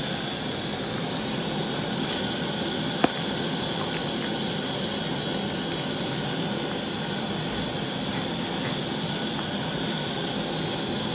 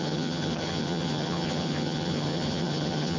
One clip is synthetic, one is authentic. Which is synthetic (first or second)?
second